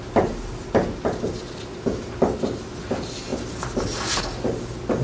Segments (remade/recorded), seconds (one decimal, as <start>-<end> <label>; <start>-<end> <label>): 0.0-5.0 recorded